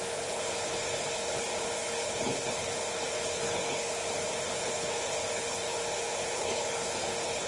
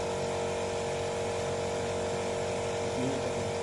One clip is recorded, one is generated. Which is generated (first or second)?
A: first